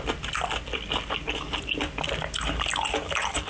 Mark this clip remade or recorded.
recorded